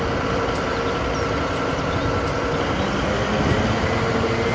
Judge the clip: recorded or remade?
recorded